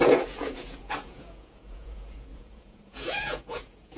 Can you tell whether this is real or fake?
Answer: fake